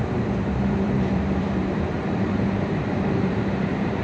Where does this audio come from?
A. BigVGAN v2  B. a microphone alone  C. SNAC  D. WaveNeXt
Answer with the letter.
A